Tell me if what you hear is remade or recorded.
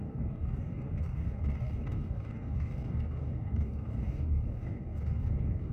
remade